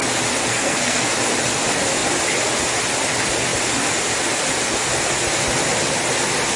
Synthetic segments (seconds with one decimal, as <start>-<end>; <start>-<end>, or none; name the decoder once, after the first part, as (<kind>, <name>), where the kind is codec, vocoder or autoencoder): 0.4-1.1 (codec, SNAC)